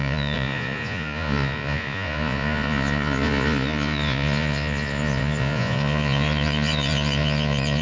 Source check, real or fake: fake